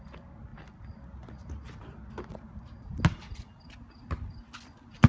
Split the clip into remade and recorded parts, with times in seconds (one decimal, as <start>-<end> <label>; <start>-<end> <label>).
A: 0.0-5.1 recorded